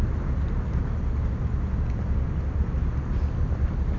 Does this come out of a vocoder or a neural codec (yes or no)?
no